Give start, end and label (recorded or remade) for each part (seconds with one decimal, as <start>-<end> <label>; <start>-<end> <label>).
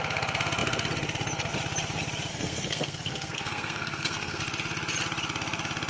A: 0.0-2.3 recorded; 2.3-4.4 remade; 4.4-5.9 recorded